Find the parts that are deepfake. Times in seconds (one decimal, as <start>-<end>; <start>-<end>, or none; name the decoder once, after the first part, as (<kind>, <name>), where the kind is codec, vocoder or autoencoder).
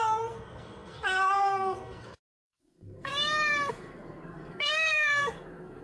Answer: 0.0-3.1 (codec, SNAC); 3.7-5.8